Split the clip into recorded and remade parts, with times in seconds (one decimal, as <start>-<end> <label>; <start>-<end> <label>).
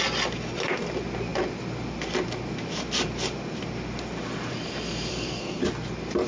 0.0-5.1 recorded; 5.1-5.6 remade; 5.6-6.3 recorded